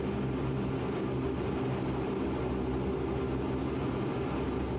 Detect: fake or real real